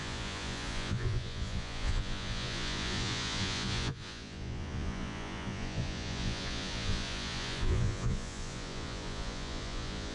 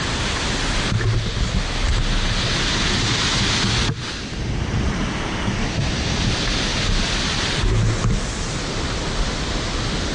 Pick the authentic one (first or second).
second